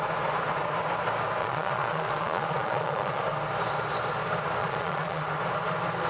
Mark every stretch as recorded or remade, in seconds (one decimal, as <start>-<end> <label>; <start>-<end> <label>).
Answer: 0.0-1.4 recorded; 1.4-3.2 remade; 3.2-4.6 recorded; 4.6-5.2 remade; 5.2-6.1 recorded